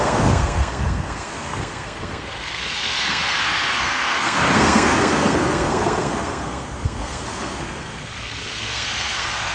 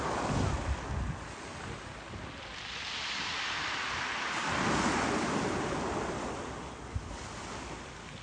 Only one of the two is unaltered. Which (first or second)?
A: second